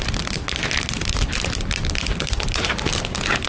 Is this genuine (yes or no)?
no